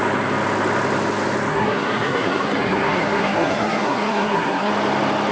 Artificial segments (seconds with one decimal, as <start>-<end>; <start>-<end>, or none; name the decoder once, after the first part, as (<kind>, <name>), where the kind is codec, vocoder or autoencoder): 1.5-4.7 (codec, SNAC)